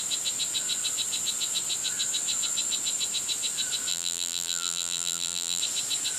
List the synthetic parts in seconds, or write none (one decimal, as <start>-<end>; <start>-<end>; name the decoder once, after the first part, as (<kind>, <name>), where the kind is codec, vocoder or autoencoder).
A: 3.9-5.6 (vocoder, BigVGAN v2)